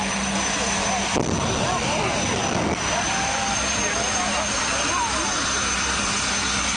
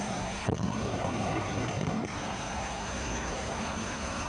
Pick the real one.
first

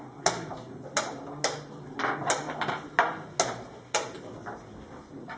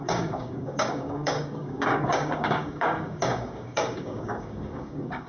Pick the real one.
first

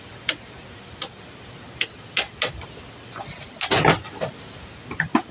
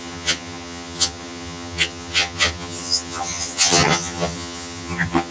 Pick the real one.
first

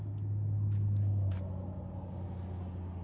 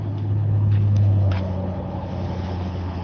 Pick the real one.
first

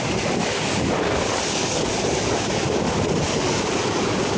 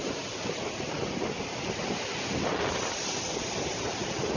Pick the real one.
second